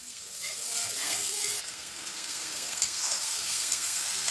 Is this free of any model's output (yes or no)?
no